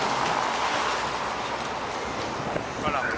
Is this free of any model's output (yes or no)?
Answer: yes